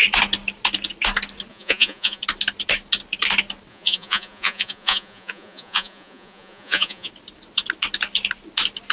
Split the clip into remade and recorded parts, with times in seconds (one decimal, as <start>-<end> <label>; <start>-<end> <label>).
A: 0.0-1.5 recorded; 1.5-2.2 remade; 2.2-3.7 recorded; 3.7-7.1 remade; 7.1-8.9 recorded